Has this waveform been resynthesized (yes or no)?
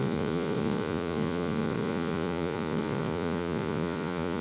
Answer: yes